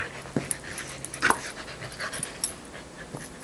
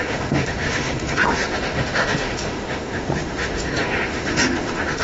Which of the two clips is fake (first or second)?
second